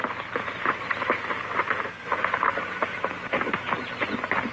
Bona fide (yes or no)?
yes